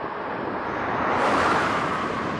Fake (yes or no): no